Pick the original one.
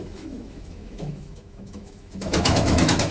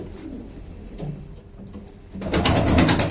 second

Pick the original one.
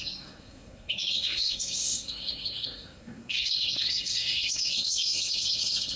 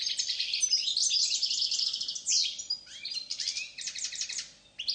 second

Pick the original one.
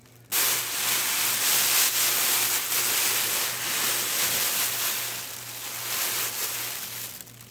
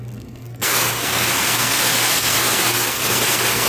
first